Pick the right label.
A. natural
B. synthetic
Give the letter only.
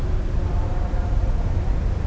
A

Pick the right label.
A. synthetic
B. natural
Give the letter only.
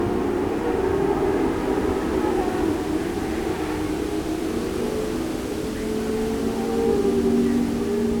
B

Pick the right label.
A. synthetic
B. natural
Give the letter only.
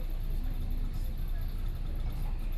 B